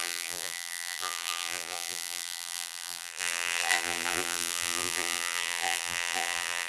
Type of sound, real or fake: fake